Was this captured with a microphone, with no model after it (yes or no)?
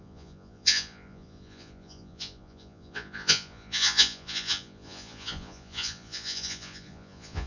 no